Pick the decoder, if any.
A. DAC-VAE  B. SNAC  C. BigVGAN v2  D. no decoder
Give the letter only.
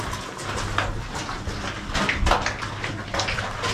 D